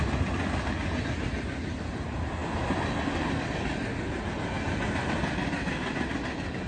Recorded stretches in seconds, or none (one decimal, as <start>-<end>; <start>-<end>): 0.0-6.7